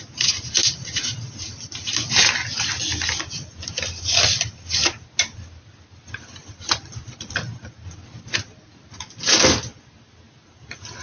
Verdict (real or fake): real